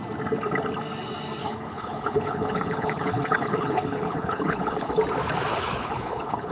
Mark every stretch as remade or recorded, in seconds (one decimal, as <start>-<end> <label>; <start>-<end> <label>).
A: 0.0-1.4 recorded; 1.4-4.9 remade; 4.9-5.5 recorded; 5.5-6.5 remade

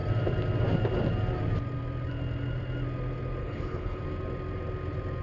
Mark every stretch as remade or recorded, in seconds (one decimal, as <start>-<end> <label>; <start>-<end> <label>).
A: 0.0-3.4 recorded; 3.4-4.0 remade; 4.0-5.2 recorded

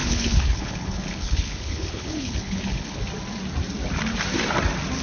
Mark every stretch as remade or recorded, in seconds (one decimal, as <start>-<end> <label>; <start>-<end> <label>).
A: 0.0-3.0 remade; 3.0-5.0 recorded

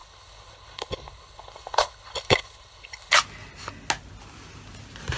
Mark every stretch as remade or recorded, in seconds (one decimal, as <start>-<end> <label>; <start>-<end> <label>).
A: 0.0-3.1 remade; 3.1-5.2 recorded

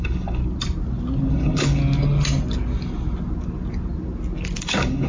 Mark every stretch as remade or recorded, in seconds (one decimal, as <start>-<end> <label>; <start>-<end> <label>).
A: 0.0-0.4 remade; 0.4-1.3 recorded; 1.3-1.8 remade; 1.8-4.6 recorded; 4.6-5.1 remade

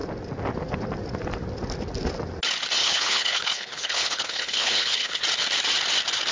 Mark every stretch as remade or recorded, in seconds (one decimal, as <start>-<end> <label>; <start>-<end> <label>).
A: 0.0-2.8 recorded; 2.8-5.2 remade; 5.2-6.3 recorded